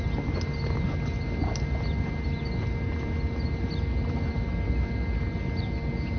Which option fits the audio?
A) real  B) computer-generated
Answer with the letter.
A